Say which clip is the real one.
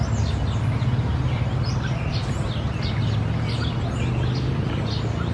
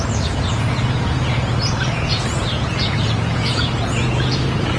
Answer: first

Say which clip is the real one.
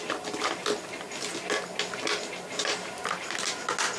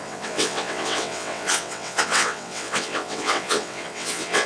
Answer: first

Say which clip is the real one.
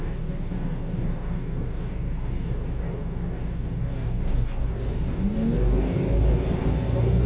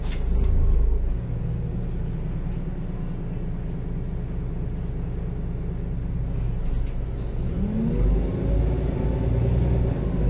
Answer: second